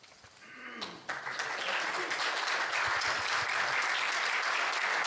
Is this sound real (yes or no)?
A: yes